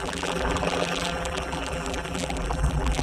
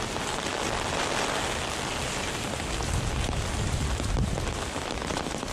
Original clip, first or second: second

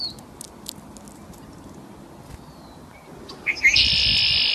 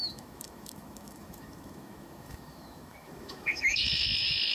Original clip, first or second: first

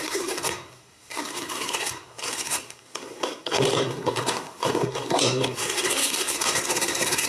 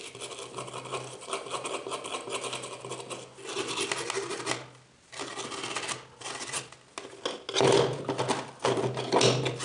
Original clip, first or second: second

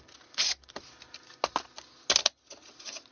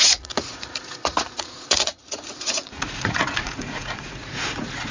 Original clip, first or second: first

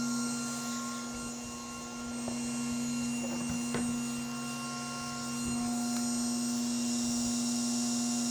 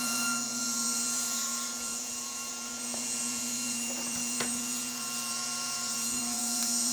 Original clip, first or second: first